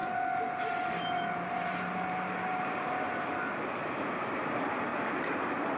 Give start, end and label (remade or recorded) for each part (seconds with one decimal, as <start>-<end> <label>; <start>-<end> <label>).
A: 0.0-4.9 remade; 4.9-5.8 recorded